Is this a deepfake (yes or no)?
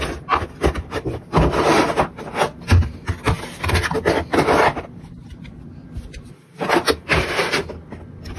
no